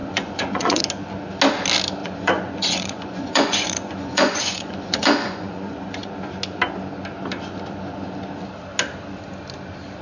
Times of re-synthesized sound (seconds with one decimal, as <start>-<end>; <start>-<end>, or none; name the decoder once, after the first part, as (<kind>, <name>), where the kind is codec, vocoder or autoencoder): 0.0-0.8 (vocoder, Vocos); 2.0-6.1